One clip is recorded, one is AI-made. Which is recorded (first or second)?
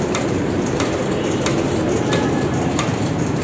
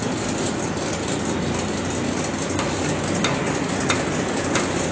second